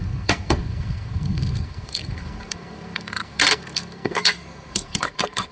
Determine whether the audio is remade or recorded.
remade